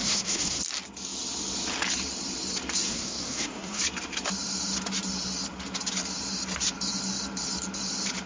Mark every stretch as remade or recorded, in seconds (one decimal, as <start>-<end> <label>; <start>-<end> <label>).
0.0-0.6 remade; 0.6-2.9 recorded; 2.9-3.8 remade; 3.8-8.3 recorded